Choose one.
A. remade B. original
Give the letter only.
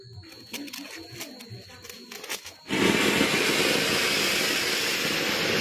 B